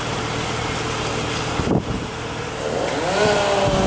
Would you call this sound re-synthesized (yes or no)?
no